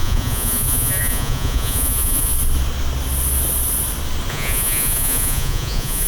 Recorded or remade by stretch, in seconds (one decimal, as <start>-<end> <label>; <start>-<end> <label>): 0.0-2.3 remade; 2.3-4.3 recorded; 4.3-6.1 remade